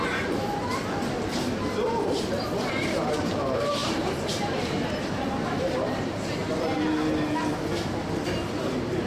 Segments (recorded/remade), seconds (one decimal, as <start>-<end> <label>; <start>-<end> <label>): 0.0-0.7 remade; 0.7-2.1 recorded; 2.1-6.4 remade; 6.4-9.1 recorded